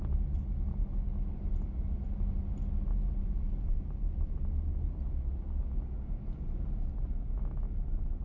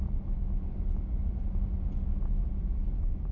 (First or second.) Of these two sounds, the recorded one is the first